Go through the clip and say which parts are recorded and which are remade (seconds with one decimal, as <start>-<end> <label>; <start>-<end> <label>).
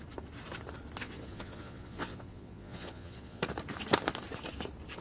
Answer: 0.0-1.0 recorded; 1.0-3.4 remade; 3.4-5.0 recorded